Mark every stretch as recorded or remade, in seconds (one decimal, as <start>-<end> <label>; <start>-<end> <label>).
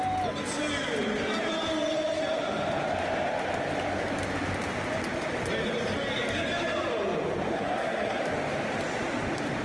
0.0-7.5 recorded; 7.5-8.2 remade; 8.2-9.6 recorded